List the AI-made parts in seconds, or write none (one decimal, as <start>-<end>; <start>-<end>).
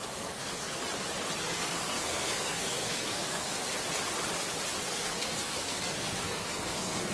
0.0-0.8; 1.4-3.7; 4.8-7.1